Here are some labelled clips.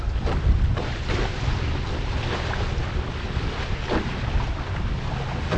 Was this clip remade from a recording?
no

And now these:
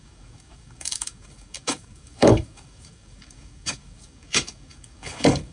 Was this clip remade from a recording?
yes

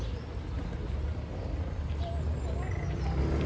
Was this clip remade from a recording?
no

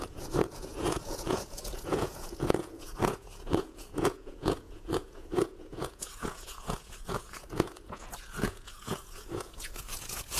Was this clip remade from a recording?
yes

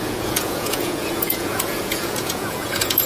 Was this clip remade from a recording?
yes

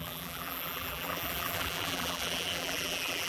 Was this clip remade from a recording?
yes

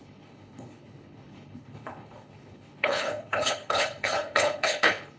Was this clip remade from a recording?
yes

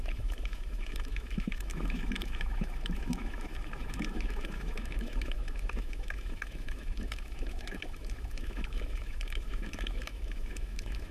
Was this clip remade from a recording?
yes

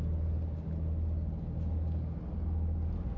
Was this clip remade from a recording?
no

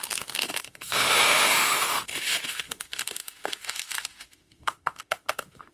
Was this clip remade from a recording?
yes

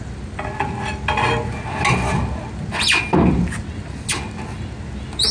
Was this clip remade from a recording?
no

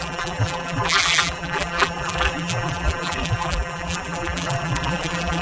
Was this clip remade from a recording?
yes